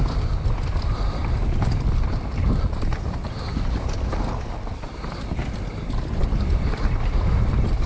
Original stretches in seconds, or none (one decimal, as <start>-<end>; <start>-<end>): 1.2-4.3; 5.4-6.2